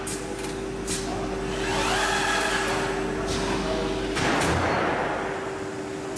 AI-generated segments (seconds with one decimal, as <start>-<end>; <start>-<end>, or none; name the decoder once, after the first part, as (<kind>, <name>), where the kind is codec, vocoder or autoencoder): none